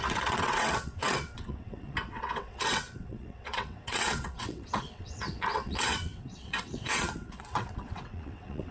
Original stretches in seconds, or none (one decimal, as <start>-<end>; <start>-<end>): none